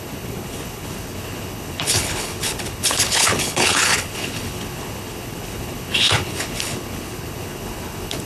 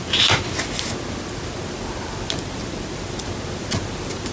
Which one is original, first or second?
second